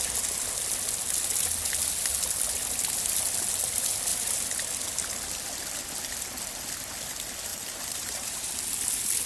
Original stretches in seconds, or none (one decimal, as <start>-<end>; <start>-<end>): 0.0-7.5; 8.5-9.3

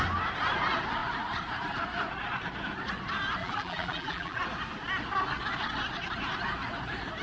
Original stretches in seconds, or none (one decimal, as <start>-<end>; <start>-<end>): 0.0-3.4; 4.4-7.2

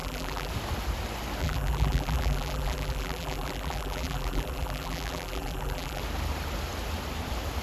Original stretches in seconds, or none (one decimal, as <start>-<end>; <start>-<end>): 0.5-1.4; 6.0-7.6

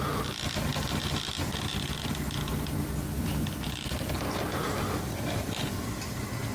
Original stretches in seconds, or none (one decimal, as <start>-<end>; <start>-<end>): 0.0-6.5

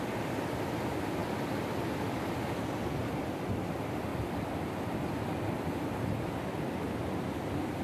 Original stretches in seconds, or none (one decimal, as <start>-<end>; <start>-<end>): 0.0-4.1

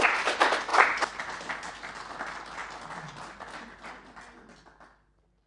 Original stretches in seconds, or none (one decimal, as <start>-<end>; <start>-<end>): 0.0-5.5